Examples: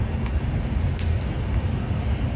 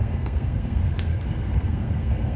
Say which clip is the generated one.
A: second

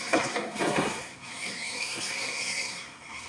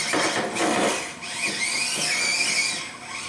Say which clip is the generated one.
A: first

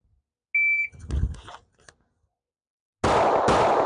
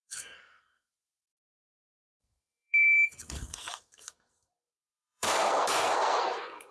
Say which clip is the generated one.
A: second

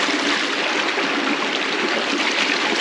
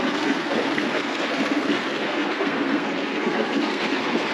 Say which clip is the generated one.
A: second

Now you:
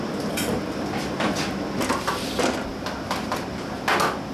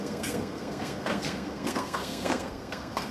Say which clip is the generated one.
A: second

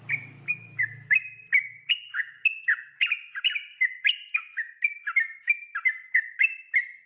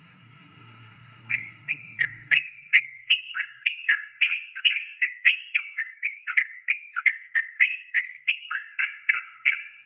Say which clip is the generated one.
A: second